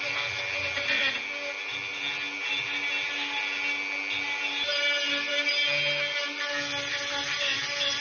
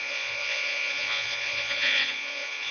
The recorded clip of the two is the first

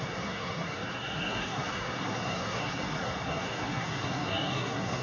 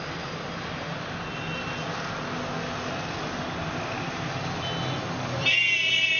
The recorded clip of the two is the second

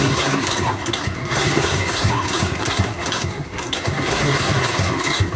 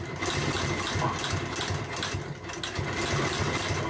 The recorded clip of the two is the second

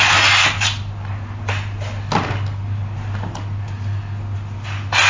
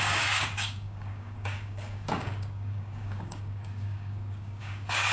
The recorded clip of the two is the first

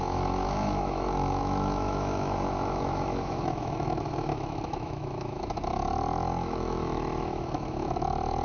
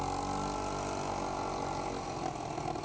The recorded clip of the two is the second